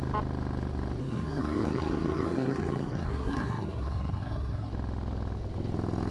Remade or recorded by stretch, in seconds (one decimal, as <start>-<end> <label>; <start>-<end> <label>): 0.0-1.0 recorded; 1.0-4.7 remade; 4.7-6.1 recorded